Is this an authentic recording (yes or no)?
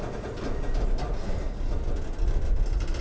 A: yes